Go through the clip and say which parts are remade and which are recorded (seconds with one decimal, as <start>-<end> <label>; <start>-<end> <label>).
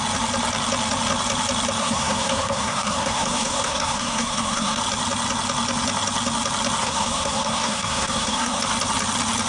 0.0-1.8 recorded; 1.8-4.8 remade; 4.8-6.8 recorded; 6.8-8.6 remade; 8.6-9.5 recorded